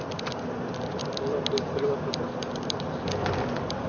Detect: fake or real real